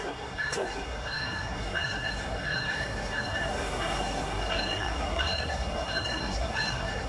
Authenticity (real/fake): fake